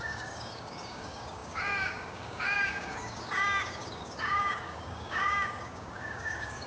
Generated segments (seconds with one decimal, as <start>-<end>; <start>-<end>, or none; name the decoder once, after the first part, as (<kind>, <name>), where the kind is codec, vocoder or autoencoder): 0.0-6.7 (codec, DAC)